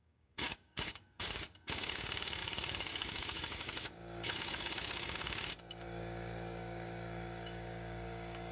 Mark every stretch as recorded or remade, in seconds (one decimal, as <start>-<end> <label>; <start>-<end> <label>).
0.0-8.5 remade